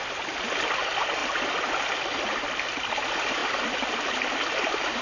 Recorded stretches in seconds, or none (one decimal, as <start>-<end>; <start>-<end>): 0.0-5.0